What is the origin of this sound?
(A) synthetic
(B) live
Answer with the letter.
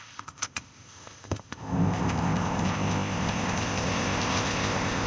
A